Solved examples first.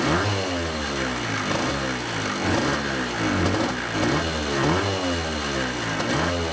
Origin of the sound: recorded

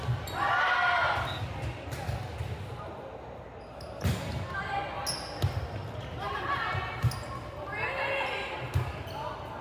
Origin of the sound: recorded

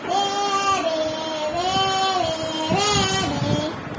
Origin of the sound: recorded